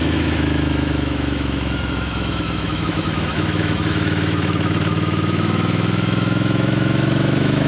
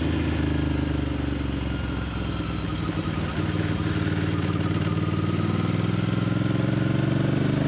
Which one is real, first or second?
second